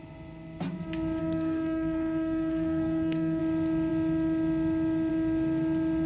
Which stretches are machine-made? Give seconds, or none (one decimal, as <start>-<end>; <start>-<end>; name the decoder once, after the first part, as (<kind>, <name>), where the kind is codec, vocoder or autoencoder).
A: 1.2-3.4 (codec, SNAC)